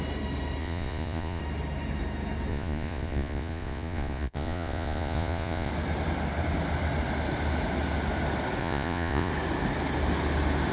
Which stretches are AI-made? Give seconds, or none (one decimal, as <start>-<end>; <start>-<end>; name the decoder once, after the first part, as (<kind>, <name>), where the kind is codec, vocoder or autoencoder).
0.6-1.4 (vocoder, Vocos); 2.5-5.7; 8.6-9.3

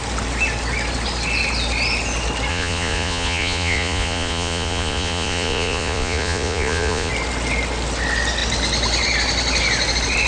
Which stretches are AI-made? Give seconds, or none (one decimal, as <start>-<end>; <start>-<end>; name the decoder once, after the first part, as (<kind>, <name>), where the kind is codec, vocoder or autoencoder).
2.5-7.1 (vocoder, Vocos)

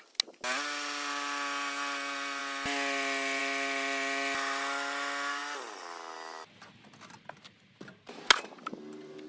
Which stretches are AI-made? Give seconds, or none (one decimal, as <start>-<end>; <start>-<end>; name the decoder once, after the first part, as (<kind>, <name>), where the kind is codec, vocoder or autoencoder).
none